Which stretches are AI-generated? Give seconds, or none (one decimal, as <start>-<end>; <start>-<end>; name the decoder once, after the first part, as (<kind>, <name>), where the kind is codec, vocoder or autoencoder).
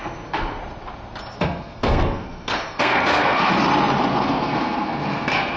0.0-0.6 (codec, SNAC); 1.3-3.5; 4.1-5.6